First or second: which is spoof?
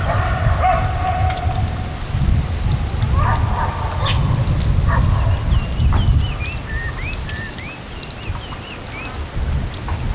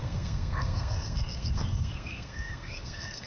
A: second